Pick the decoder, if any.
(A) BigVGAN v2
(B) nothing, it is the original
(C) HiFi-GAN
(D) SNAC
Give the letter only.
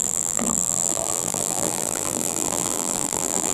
A